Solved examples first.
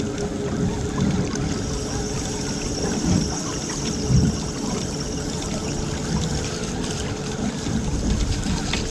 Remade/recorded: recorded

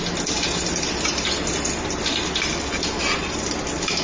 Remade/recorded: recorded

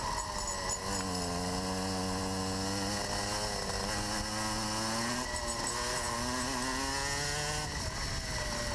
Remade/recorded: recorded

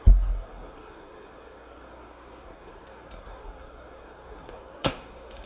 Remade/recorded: remade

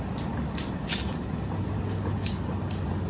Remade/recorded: recorded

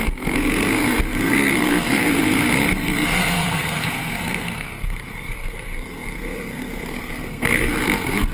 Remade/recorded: remade